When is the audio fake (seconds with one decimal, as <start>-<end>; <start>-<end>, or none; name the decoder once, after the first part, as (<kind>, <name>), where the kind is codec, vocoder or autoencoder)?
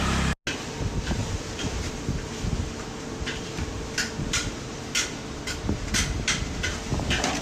1.2-4.8 (vocoder, BigVGAN v2)